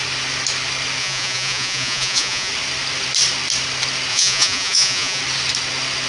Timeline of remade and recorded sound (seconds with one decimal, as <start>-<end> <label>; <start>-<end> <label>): 0.0-1.0 recorded; 1.0-2.5 remade; 2.5-4.1 recorded; 4.1-5.2 remade; 5.2-6.1 recorded